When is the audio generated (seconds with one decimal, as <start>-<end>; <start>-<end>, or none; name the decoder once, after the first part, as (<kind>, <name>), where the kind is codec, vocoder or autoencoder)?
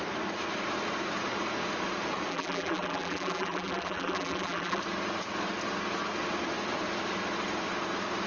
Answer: 2.3-4.8 (vocoder, BigVGAN v2)